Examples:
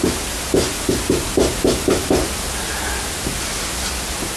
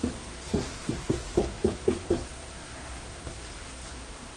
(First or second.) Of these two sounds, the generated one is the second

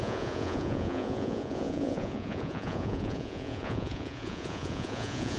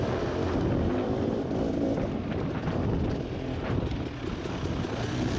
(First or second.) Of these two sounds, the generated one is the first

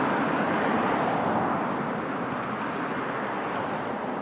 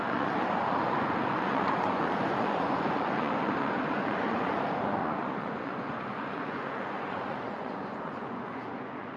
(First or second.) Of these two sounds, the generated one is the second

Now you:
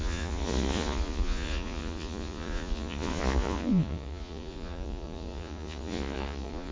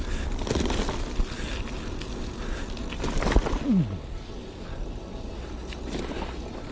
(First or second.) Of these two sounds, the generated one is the first